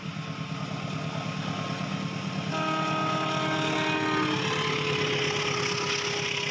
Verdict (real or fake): real